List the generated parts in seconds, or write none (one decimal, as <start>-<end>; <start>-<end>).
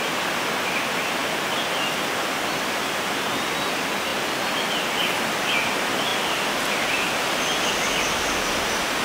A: none